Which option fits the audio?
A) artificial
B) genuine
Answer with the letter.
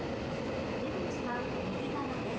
B